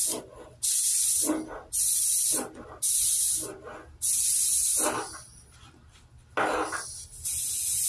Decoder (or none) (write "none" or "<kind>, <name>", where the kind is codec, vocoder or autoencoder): none